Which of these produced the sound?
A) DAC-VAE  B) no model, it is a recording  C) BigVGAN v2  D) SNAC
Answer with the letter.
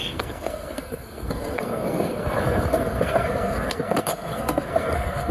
D